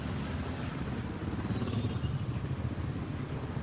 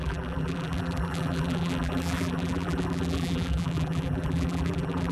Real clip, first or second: first